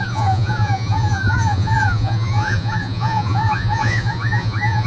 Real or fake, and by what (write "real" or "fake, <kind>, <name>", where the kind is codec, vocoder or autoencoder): fake, vocoder, Vocos